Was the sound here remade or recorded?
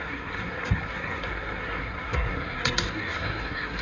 remade